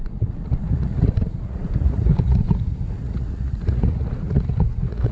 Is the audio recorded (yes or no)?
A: no